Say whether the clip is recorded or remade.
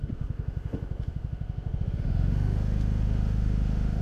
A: remade